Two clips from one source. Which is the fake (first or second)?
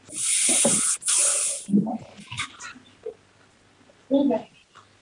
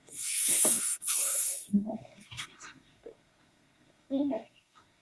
second